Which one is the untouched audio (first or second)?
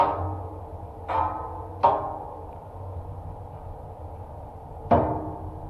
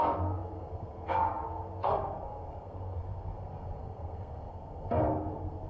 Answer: first